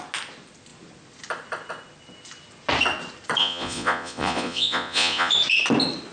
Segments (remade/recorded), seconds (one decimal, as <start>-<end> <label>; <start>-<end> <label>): 0.0-3.4 recorded; 3.4-5.3 remade; 5.3-6.1 recorded